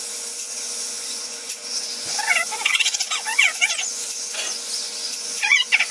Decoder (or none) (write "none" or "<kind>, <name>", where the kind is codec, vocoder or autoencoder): vocoder, Vocos